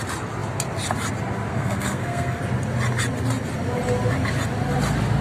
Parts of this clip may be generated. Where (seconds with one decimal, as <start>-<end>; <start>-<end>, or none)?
1.5-2.4